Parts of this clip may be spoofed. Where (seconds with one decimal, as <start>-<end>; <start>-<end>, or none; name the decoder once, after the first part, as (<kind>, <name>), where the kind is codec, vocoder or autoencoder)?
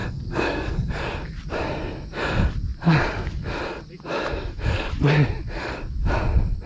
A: 0.0-1.0 (codec, SNAC)